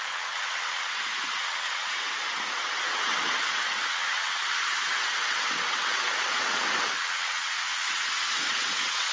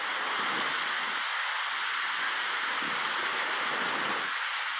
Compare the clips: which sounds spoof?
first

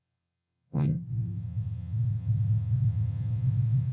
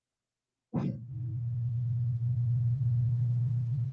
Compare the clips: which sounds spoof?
first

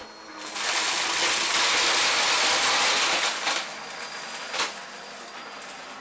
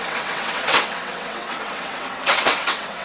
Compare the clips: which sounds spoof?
second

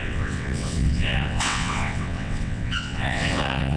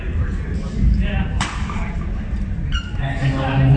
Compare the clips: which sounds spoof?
first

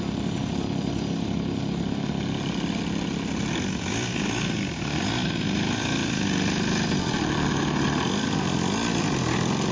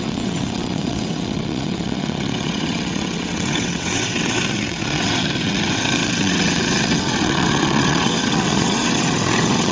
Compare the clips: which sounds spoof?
second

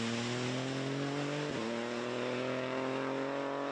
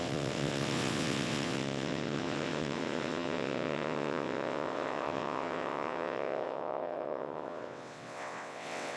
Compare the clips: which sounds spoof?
second